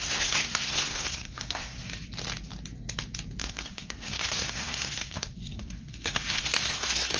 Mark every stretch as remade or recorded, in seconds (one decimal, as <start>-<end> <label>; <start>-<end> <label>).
0.0-1.9 remade; 1.9-3.4 recorded; 3.4-7.2 remade